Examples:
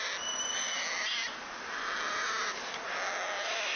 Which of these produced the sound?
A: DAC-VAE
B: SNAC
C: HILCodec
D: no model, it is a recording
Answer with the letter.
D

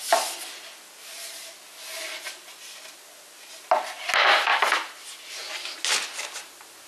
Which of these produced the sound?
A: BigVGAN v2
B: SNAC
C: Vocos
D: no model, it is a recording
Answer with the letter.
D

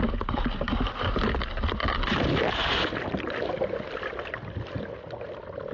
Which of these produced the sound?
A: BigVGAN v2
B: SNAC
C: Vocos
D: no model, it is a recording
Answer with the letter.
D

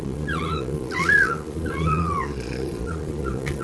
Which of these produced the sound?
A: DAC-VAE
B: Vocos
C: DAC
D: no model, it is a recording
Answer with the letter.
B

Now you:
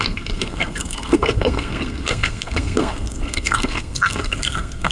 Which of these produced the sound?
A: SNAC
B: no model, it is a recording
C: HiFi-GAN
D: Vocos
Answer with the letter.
A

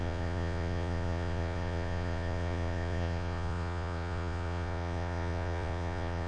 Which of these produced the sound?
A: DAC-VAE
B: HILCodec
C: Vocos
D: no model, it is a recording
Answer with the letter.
C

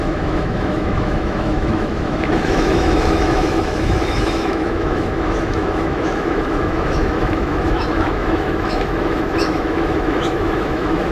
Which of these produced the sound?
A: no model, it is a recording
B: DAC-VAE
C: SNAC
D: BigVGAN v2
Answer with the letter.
B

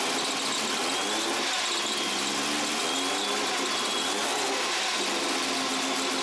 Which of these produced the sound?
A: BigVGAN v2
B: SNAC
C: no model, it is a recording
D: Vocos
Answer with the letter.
C